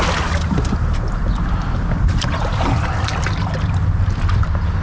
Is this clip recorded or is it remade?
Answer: recorded